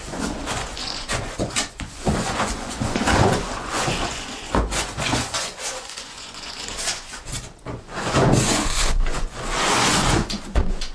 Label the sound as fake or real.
fake